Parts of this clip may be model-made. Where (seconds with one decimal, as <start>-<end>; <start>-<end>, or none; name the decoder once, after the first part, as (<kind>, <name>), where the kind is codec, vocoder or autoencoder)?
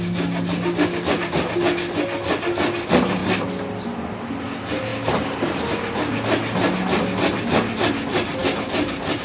0.0-8.4 (vocoder, BigVGAN v2)